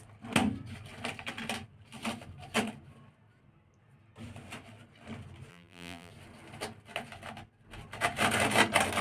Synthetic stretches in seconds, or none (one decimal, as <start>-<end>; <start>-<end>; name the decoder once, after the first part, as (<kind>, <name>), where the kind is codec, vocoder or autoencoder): 5.5-6.1 (vocoder, BigVGAN v2)